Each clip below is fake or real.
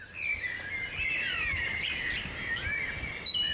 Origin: real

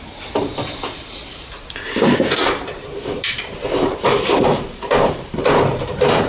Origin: fake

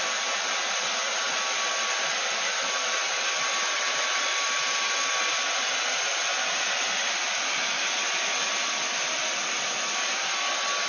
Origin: real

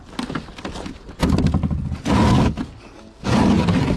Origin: real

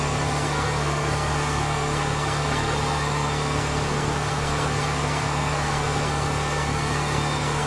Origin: fake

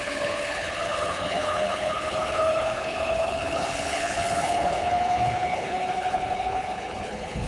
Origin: fake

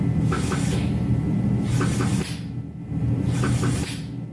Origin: real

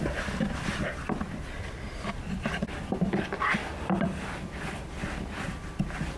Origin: fake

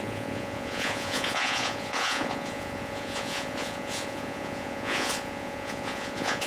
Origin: fake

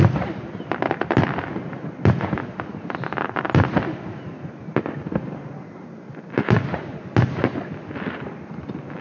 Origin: real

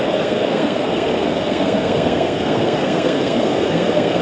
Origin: fake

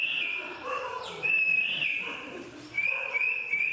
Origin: fake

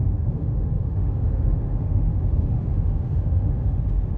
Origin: fake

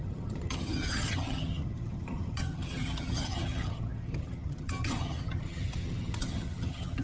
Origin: fake